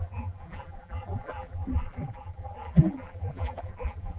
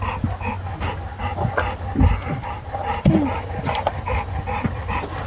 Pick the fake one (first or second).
first